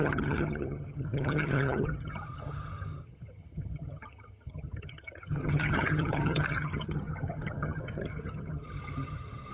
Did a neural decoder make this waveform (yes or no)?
yes